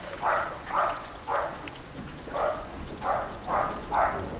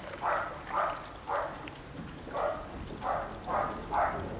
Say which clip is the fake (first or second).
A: first